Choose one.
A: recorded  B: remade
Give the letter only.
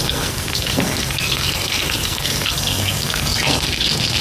B